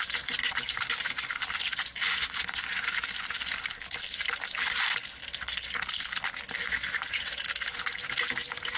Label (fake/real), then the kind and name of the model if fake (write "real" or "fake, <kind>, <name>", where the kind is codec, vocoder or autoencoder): real